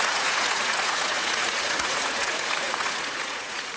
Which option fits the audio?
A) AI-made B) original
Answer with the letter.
A